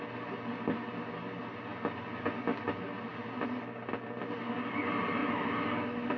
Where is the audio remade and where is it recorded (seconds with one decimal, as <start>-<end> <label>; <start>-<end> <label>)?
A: 0.0-5.2 recorded; 5.2-6.2 remade